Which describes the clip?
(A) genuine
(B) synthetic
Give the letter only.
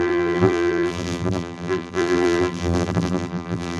B